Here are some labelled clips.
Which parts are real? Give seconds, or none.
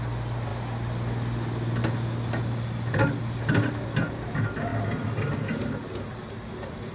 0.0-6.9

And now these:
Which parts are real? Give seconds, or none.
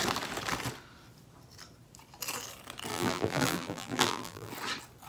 0.0-2.9; 4.5-5.1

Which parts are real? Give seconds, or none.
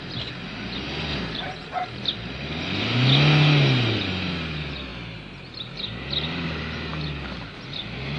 0.0-8.2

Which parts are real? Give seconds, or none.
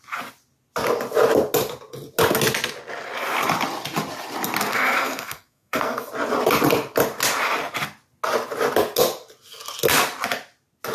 0.0-4.7; 6.1-10.9